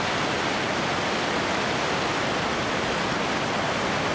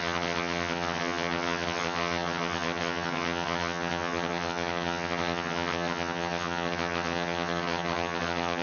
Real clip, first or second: first